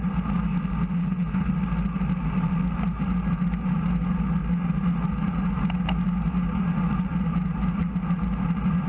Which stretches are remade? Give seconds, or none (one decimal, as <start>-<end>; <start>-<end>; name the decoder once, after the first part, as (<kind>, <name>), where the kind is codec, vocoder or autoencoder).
1.0-1.5 (codec, HILCodec)